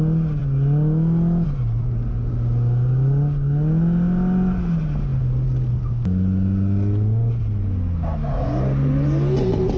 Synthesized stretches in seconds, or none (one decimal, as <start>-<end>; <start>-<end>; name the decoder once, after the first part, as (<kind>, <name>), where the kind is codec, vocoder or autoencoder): none